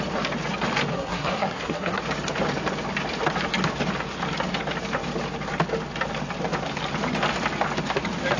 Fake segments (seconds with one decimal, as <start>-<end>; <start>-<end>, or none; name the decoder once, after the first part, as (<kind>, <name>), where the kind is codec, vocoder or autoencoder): 0.9-2.0 (codec, SNAC)